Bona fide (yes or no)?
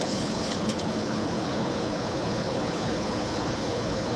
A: no